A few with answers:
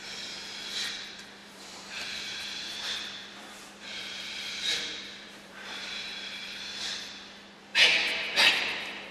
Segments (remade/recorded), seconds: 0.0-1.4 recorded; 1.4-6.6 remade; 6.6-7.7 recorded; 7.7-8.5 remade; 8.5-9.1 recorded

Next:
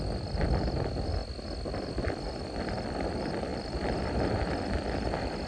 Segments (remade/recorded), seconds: 0.0-3.5 recorded; 3.5-4.3 remade; 4.3-5.5 recorded